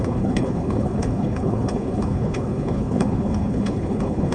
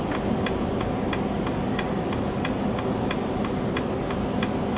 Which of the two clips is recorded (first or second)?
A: second